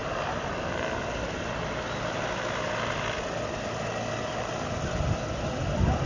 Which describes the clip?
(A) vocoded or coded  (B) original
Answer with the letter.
B